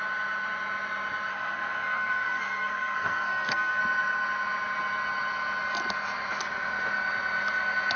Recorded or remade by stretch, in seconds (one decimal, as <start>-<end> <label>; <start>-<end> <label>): 0.0-1.3 recorded; 1.3-3.8 remade; 3.8-8.0 recorded